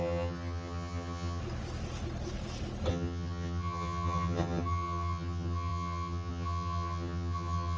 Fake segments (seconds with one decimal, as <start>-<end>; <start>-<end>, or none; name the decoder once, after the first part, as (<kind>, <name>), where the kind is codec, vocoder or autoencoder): 0.0-1.4 (vocoder, HiFi-GAN); 2.9-7.8